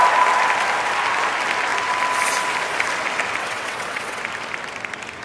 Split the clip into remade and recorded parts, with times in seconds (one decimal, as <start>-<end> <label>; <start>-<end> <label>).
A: 0.0-3.4 recorded; 3.4-4.2 remade; 4.2-5.2 recorded

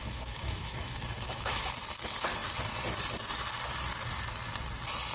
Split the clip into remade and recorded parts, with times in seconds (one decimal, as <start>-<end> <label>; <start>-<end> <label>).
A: 0.0-1.8 remade; 1.8-5.1 recorded